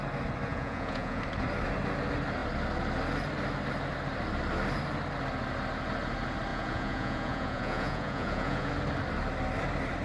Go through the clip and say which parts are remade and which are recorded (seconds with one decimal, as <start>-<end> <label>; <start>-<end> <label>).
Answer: 0.0-0.5 recorded; 0.5-1.2 remade; 1.2-6.5 recorded; 6.5-8.7 remade; 8.7-10.0 recorded